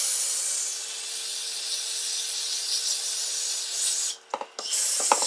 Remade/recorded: recorded